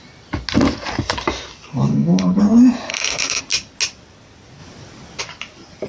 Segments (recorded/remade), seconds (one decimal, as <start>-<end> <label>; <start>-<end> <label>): 0.0-1.9 recorded; 1.9-2.4 remade; 2.4-2.9 recorded; 2.9-3.4 remade; 3.4-5.9 recorded